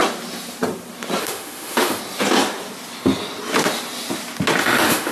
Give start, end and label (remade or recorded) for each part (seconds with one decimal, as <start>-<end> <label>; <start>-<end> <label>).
0.0-1.2 recorded; 1.2-2.0 remade; 2.0-4.6 recorded; 4.6-5.1 remade